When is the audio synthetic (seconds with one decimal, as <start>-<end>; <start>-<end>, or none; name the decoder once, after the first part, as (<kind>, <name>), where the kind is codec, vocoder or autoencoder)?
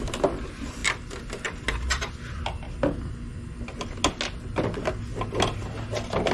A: none